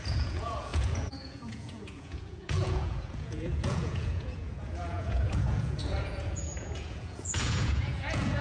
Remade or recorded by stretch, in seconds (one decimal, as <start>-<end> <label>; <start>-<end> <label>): 0.0-8.4 remade